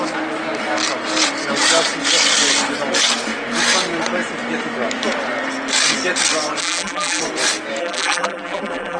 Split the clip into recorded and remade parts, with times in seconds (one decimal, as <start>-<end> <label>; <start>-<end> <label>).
0.0-6.6 recorded; 6.6-7.2 remade; 7.2-7.8 recorded; 7.8-9.0 remade